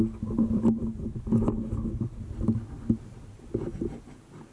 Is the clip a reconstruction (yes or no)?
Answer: no